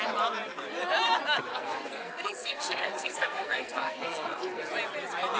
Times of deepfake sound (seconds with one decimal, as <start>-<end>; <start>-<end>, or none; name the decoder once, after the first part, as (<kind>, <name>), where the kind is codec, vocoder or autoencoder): 1.5-4.7 (codec, SNAC)